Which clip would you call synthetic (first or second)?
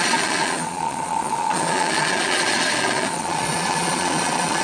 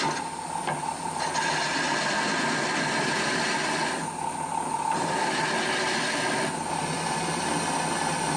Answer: first